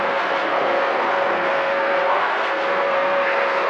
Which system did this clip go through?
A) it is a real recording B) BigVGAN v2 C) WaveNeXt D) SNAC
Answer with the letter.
D